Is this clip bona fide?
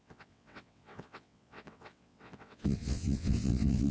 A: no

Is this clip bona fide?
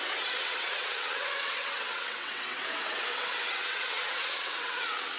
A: no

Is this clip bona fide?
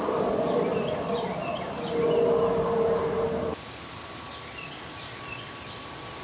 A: yes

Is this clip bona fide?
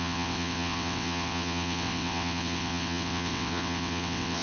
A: no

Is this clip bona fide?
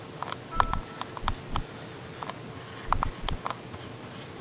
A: yes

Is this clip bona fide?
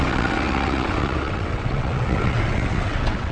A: no